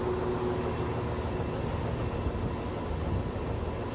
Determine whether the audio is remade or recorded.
recorded